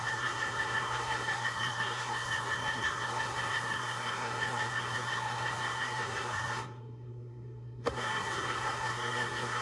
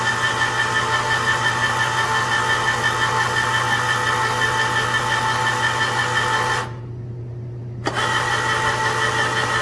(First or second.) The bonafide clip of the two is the second